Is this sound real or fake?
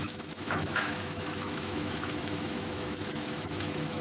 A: fake